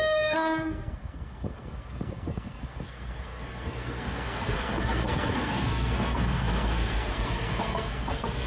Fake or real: fake